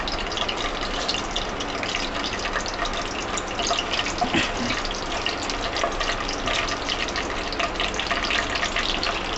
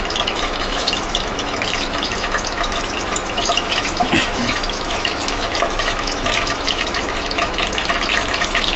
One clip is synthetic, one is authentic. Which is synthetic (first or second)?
second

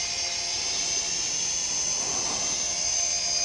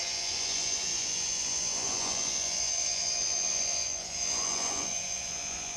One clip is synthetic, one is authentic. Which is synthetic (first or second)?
second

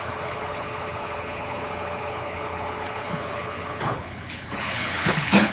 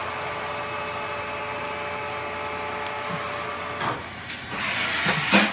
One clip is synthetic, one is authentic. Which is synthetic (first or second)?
first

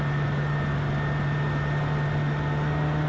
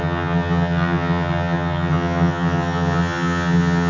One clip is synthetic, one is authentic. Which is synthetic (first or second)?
second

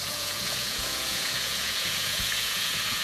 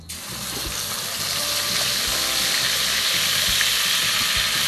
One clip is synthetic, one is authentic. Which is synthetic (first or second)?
first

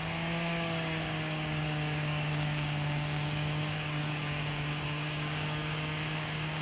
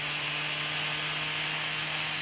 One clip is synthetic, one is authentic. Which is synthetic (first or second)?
first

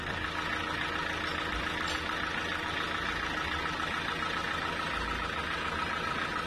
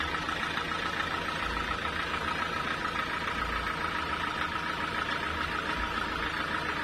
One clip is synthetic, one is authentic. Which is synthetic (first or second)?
second